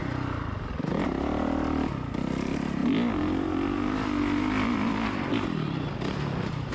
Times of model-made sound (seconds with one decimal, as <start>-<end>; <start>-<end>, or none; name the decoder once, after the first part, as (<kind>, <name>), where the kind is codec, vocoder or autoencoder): none